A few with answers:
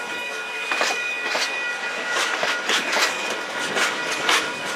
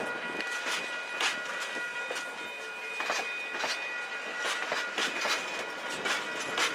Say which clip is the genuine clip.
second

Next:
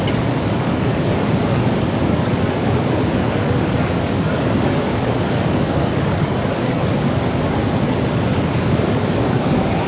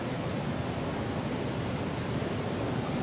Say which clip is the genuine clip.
second